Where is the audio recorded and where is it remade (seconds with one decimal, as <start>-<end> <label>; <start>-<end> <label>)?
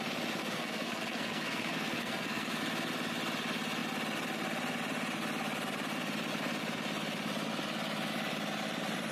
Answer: 0.0-0.4 recorded; 0.4-2.6 remade; 2.6-9.1 recorded